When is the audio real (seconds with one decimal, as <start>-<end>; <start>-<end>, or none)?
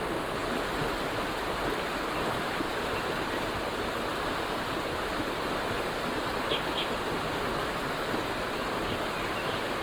0.0-9.8